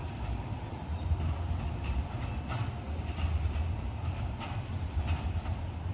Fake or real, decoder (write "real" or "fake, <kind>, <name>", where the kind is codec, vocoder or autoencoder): real